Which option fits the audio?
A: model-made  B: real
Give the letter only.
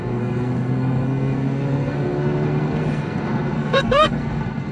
A